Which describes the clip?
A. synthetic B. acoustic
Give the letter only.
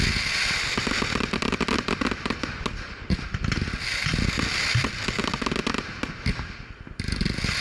B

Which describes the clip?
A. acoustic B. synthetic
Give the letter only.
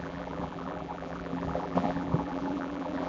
B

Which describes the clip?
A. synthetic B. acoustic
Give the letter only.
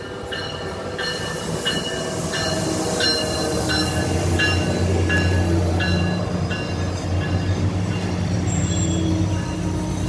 B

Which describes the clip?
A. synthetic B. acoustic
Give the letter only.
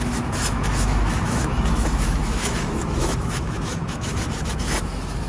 A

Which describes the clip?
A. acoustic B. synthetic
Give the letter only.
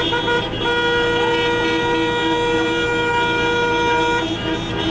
A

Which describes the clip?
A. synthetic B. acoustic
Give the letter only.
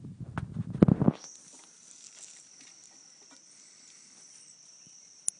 B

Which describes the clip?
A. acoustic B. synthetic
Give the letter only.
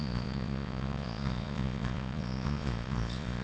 B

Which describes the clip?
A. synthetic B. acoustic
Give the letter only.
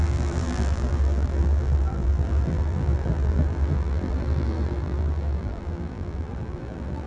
A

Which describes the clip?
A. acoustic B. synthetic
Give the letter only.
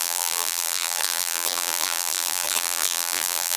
B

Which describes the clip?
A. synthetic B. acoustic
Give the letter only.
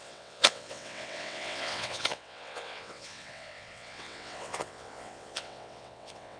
A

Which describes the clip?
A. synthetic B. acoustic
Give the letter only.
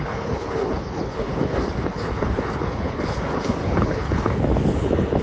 A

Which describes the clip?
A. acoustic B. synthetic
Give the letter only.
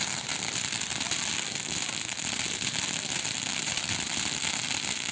B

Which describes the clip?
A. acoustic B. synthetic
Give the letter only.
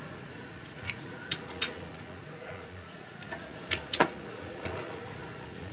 B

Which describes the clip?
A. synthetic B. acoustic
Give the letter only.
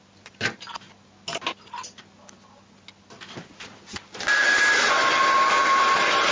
B